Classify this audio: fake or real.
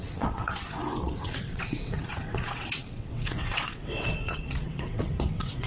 fake